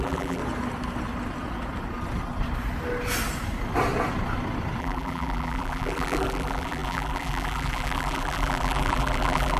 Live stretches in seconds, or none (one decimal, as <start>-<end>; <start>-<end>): 0.4-4.8